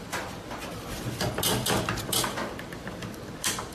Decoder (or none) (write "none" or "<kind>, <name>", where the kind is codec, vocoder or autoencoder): vocoder, BigVGAN v2